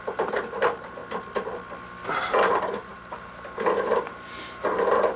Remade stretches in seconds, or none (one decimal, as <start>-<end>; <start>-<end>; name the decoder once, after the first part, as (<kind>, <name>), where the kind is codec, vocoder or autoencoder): 0.0-1.0 (vocoder, BigVGAN v2); 2.3-5.2